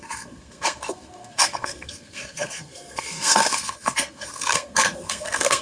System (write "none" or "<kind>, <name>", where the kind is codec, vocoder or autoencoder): codec, SNAC